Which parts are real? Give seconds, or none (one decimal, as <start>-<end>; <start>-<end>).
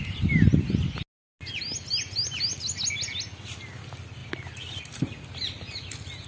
0.0-6.3